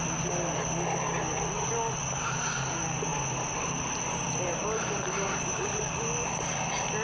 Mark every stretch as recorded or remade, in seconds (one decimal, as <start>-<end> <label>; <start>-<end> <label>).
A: 0.0-3.1 recorded; 3.1-6.0 remade; 6.0-7.0 recorded